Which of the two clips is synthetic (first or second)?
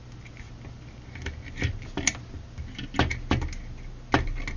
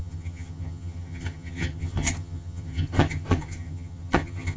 second